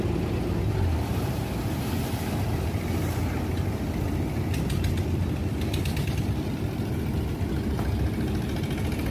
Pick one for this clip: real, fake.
real